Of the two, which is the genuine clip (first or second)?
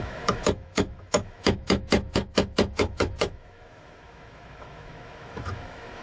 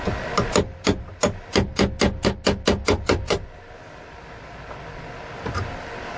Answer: second